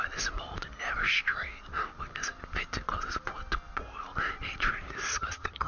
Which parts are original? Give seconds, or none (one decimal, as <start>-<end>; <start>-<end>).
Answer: 0.0-5.1